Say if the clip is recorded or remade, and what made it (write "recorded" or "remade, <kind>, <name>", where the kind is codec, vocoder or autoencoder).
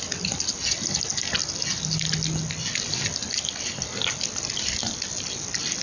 recorded